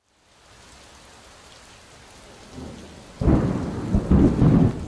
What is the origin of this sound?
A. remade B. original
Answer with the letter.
B